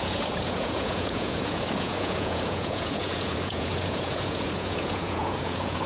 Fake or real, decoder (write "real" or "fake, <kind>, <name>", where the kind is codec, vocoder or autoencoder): fake, vocoder, Vocos